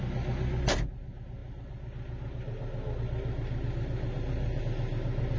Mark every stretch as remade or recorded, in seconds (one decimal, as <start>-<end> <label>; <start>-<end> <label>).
0.0-5.4 recorded

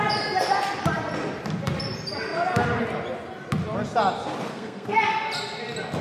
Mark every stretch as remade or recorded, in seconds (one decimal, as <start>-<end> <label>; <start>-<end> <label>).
0.0-4.5 recorded; 4.5-5.1 remade; 5.1-6.0 recorded